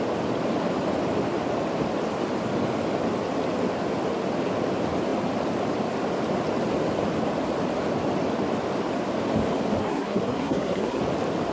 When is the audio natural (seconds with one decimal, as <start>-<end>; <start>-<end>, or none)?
0.0-9.8; 11.0-11.5